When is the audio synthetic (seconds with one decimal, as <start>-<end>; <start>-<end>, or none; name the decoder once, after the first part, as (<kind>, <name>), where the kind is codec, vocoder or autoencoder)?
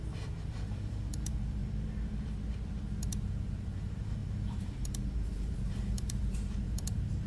0.0-1.6 (vocoder, BigVGAN v2); 3.0-7.3